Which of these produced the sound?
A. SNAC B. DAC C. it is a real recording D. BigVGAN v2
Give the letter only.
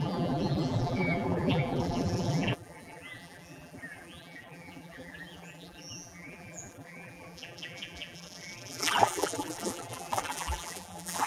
D